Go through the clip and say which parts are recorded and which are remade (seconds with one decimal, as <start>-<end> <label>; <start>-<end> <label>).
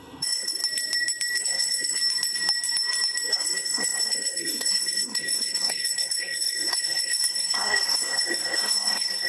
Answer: 0.0-0.6 remade; 0.6-1.4 recorded; 1.4-2.0 remade; 2.0-3.3 recorded; 3.3-9.3 remade